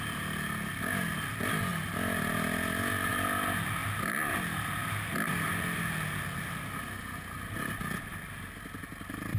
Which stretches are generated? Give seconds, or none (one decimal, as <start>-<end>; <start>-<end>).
none